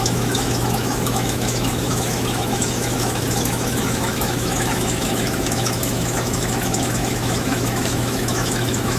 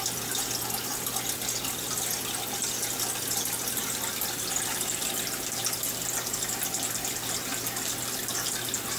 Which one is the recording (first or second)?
second